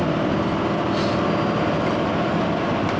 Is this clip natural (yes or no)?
yes